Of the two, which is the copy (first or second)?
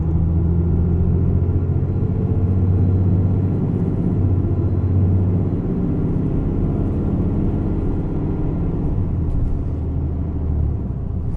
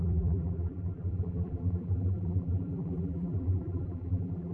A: second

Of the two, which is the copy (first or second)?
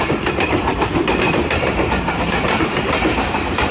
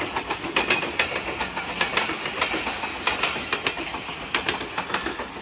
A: first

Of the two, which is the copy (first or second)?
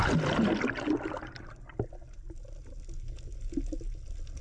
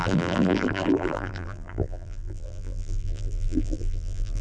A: second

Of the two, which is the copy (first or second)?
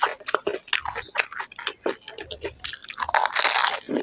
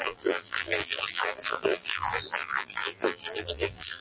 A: second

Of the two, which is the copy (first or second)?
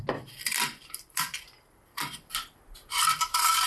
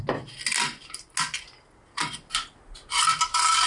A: first